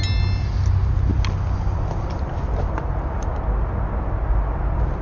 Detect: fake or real real